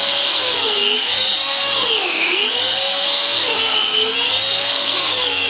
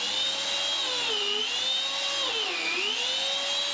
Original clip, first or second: second